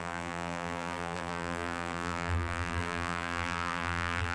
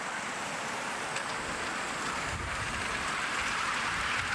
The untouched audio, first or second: second